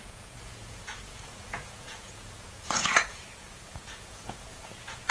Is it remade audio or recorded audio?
remade